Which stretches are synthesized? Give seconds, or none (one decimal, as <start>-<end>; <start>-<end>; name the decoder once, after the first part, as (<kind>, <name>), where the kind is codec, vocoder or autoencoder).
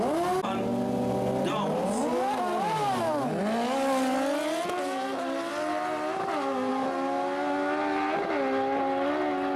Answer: none